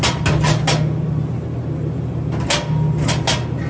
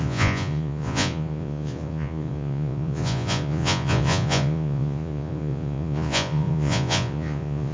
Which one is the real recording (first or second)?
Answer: first